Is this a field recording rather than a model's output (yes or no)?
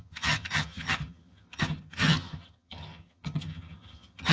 no